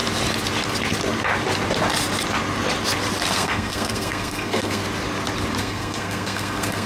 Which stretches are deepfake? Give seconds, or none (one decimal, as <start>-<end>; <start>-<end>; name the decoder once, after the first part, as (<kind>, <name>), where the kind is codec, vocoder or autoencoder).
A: 3.3-4.8 (codec, SNAC); 5.6-6.9